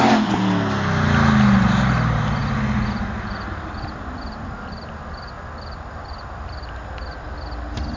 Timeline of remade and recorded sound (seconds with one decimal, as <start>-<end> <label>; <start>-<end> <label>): 0.0-8.0 recorded